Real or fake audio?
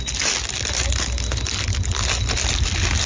real